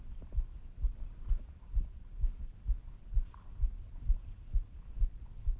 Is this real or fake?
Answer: real